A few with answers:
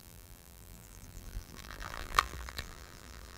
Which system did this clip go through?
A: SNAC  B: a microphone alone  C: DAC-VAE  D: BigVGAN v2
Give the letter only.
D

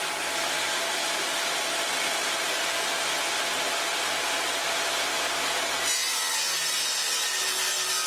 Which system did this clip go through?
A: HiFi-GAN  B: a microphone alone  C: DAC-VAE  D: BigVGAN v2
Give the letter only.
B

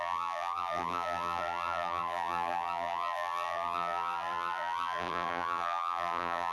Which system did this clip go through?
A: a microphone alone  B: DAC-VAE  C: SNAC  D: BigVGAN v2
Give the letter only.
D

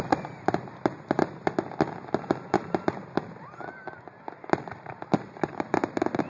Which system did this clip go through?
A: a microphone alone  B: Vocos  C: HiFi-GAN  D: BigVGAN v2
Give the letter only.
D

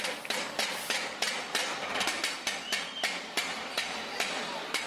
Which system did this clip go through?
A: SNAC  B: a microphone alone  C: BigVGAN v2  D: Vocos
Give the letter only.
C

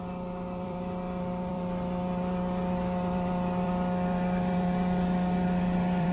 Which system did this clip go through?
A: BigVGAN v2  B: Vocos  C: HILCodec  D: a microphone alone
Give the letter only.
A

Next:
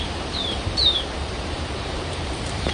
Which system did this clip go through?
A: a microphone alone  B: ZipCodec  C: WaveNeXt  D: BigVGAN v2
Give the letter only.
D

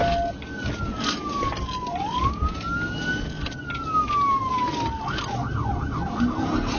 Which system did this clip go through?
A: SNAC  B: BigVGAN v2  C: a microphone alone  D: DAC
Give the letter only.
C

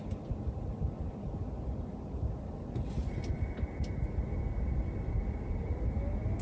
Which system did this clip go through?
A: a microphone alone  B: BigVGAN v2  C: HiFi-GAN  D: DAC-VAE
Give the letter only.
A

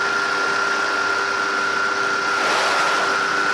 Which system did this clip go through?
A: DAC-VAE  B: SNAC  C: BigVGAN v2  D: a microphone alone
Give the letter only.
D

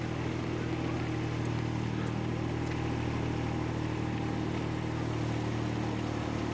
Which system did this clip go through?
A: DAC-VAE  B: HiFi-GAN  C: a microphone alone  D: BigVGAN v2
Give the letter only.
C